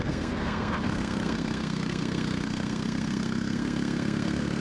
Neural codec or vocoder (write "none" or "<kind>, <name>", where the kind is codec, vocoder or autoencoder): codec, SNAC